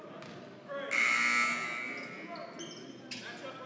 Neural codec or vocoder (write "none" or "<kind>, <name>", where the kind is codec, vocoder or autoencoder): none